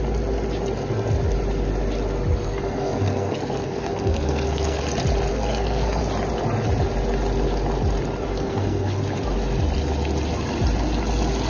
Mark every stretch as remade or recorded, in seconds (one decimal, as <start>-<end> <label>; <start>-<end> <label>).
0.0-2.3 recorded; 2.3-4.8 remade; 4.8-5.3 recorded; 5.3-6.0 remade; 6.0-8.3 recorded; 8.3-9.0 remade; 9.0-11.5 recorded